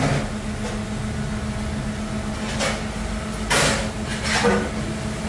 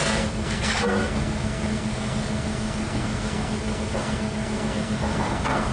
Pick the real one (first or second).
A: first